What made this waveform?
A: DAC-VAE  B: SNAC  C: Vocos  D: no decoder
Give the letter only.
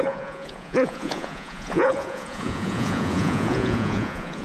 C